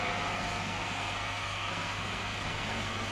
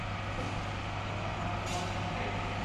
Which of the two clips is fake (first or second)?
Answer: first